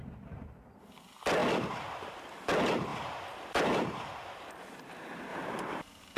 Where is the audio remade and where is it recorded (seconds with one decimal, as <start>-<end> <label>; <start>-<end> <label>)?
0.0-2.9 recorded; 2.9-3.6 remade; 3.6-6.2 recorded